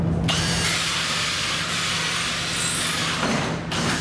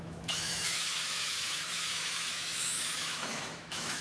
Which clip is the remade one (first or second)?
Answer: second